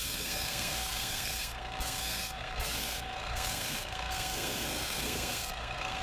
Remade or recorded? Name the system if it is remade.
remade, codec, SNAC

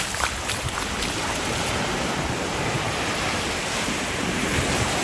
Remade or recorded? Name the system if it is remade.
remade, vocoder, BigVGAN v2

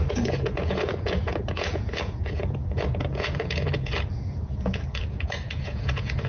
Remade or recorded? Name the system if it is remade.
remade, vocoder, Vocos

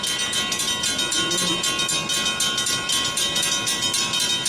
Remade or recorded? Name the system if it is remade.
recorded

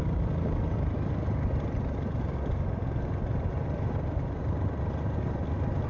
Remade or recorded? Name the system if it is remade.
recorded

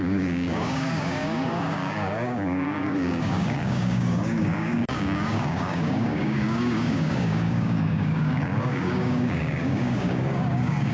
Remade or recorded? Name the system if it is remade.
remade, codec, DAC